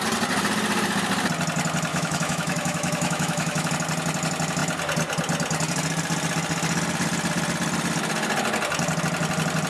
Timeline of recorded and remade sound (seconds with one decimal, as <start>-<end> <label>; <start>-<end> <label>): 0.0-1.9 recorded; 1.9-3.7 remade; 3.7-9.7 recorded